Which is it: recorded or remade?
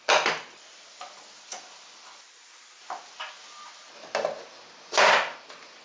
recorded